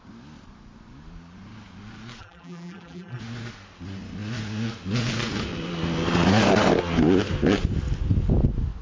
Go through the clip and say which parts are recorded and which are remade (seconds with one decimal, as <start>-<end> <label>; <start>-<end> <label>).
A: 0.0-2.2 recorded; 2.2-3.2 remade; 3.2-8.8 recorded